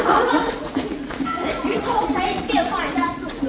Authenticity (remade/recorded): remade